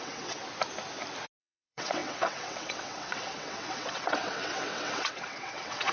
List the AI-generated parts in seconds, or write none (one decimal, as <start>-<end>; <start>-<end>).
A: 0.0-0.4; 1.4-5.9